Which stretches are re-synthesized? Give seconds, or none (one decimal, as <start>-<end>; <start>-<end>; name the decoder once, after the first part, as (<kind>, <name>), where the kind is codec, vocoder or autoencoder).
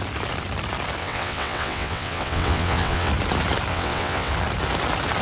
1.0-3.1 (vocoder, WaveNeXt); 3.7-4.3